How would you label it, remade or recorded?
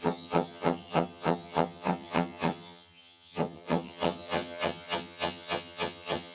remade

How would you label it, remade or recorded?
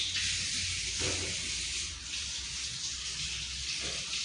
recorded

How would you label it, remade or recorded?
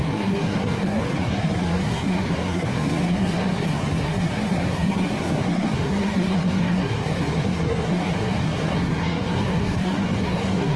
remade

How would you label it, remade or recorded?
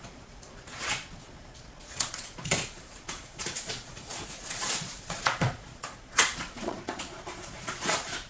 remade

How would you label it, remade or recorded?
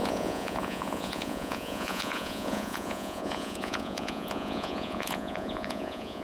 remade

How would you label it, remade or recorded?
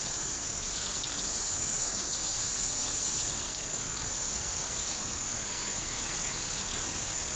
remade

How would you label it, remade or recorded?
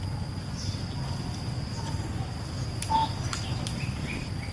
recorded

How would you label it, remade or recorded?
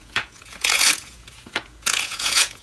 remade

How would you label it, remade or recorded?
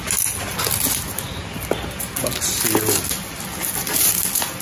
recorded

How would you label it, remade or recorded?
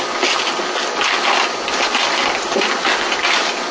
recorded